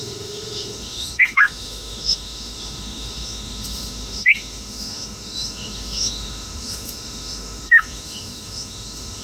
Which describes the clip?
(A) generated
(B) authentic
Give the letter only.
A